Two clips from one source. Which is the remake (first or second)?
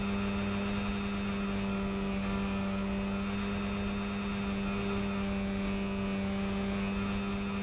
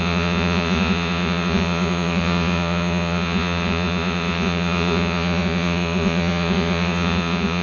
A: second